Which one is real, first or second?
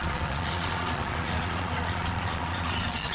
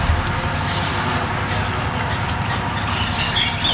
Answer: second